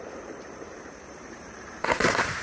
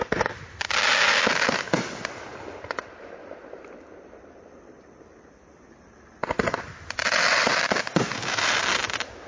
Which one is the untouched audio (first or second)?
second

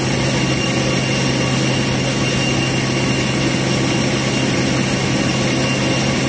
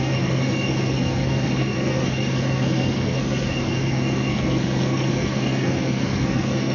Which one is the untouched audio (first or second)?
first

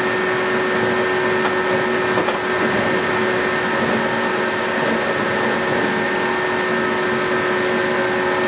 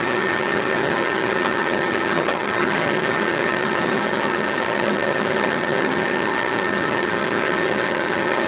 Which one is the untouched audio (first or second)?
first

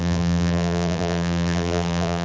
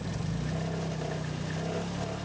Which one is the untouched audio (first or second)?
second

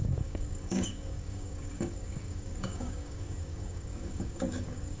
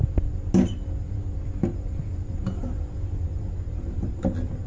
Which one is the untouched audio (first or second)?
second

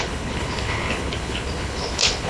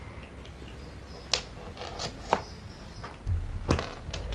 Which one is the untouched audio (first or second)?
second